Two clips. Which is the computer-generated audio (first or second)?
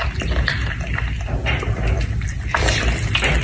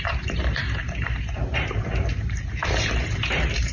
second